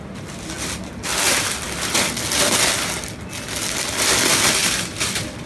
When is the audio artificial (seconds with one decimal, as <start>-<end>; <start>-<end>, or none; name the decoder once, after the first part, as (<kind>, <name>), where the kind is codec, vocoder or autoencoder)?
4.6-5.5 (vocoder, BigVGAN v2)